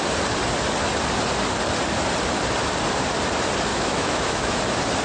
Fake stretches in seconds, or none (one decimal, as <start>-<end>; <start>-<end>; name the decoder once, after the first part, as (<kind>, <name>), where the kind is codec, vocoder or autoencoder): 3.7-4.6 (autoencoder, DAC-VAE)